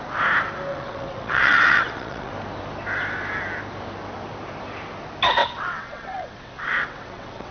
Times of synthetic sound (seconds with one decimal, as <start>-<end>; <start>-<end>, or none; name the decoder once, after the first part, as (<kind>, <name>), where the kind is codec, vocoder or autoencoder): 0.7-2.3 (vocoder, WaveNeXt); 5.4-7.5

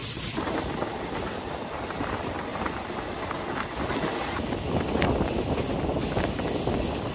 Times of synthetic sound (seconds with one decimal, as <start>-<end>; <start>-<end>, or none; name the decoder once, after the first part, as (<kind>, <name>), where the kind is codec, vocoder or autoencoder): 0.0-2.5 (vocoder, BigVGAN v2)

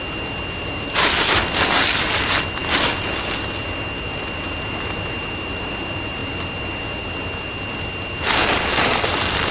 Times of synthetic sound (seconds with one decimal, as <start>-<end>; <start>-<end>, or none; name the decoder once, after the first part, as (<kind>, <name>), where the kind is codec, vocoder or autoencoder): none

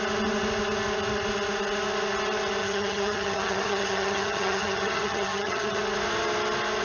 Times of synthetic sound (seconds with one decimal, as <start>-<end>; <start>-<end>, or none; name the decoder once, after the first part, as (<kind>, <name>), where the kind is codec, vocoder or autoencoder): 2.6-5.8 (vocoder, HiFi-GAN)

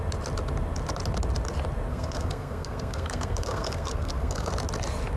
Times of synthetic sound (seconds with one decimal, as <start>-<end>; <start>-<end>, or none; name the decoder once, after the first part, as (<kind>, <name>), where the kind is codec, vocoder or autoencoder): 1.9-4.5 (codec, SNAC)

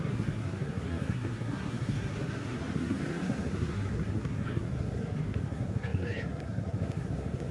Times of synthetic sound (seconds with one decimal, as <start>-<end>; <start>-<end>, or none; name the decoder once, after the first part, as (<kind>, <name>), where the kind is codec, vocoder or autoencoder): 0.0-7.5 (codec, SNAC)